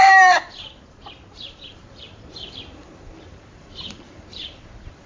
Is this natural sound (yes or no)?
no